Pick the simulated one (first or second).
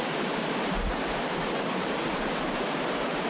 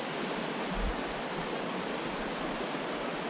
first